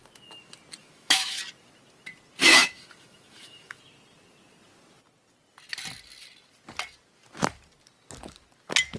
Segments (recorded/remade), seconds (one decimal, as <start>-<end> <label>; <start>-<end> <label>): 0.0-0.8 recorded; 0.8-1.4 remade; 1.4-2.4 recorded; 2.4-3.8 remade; 3.8-9.0 recorded